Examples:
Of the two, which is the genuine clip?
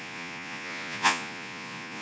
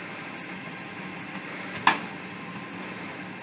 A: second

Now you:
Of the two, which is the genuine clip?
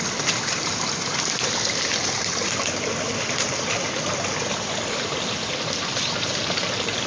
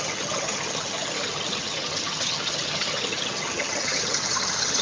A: first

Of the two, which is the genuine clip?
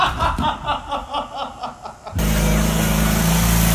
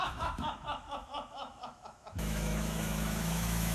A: first